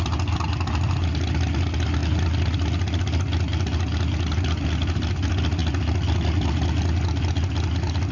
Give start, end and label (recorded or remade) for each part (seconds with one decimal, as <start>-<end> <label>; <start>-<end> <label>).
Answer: 0.0-8.1 recorded